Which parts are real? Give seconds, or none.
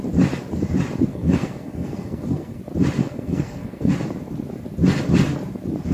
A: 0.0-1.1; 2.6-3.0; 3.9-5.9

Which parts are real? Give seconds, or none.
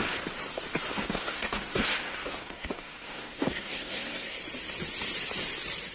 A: 0.0-0.9; 4.4-5.9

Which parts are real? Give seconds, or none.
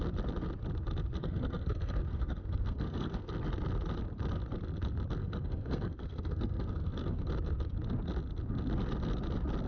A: 0.0-1.2; 3.3-5.2; 7.3-9.7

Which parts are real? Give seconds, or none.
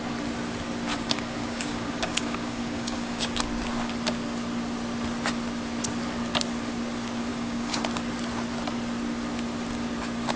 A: 0.0-0.9; 3.4-7.3; 7.8-10.4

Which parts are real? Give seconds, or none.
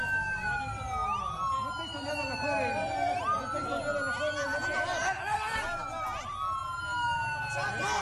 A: 0.0-8.0